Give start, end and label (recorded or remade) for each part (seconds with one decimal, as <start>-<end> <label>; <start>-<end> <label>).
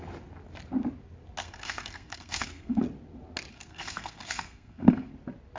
0.0-1.4 recorded; 1.4-2.8 remade; 2.8-3.5 recorded; 3.5-5.1 remade; 5.1-5.6 recorded